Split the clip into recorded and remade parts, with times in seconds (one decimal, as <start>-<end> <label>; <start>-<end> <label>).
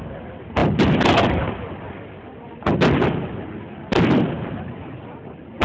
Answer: 0.0-5.6 recorded